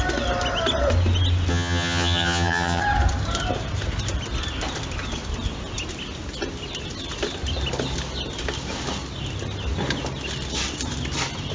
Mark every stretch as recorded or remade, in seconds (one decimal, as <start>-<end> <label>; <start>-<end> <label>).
0.0-1.5 recorded; 1.5-2.8 remade; 2.8-11.5 recorded